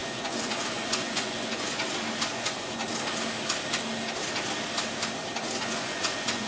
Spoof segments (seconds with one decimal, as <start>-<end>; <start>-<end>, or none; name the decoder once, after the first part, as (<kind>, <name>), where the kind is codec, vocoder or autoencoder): 0.0-1.8 (vocoder, Vocos); 2.3-2.8; 5.6-6.5